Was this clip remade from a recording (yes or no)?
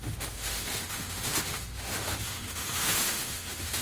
yes